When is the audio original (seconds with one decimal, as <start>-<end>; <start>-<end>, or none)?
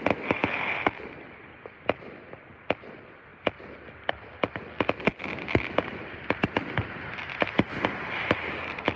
0.0-9.0